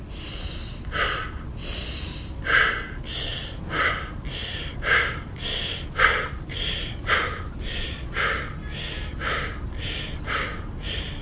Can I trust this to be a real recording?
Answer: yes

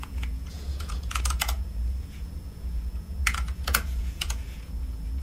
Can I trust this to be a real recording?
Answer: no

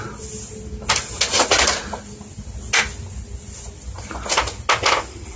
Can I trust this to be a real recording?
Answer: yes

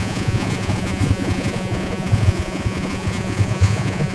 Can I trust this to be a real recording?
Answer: no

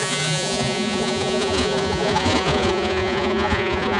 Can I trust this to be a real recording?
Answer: no